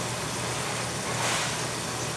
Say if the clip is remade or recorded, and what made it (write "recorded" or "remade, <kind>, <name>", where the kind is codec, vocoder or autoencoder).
recorded